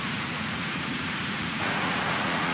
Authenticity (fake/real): fake